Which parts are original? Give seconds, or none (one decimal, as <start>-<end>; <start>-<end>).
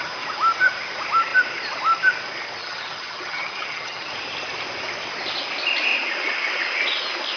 0.0-2.6; 4.1-7.4